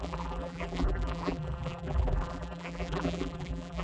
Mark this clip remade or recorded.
remade